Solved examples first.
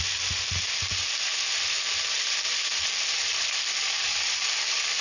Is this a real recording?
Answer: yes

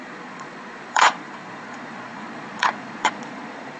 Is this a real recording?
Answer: no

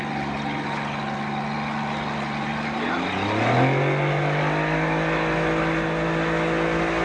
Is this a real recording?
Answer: yes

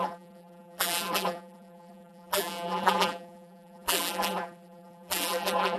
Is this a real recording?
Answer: no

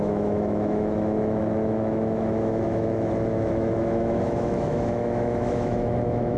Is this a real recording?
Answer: no